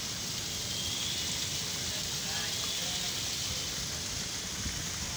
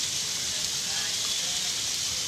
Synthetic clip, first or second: second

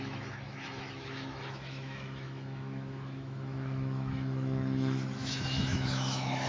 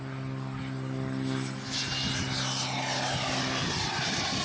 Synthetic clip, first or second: first